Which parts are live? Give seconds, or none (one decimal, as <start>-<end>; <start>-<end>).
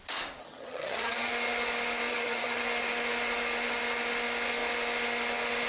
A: 0.0-0.4; 1.3-2.1; 2.6-5.7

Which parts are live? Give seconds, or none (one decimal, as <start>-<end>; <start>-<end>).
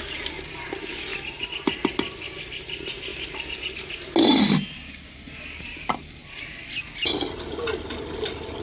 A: 0.0-8.6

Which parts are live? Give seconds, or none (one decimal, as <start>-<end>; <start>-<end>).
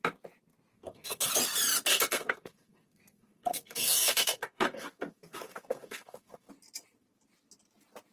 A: 0.0-0.7; 1.3-1.9; 6.5-8.1